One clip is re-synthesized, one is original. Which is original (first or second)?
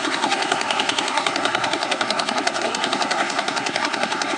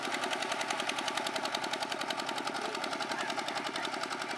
second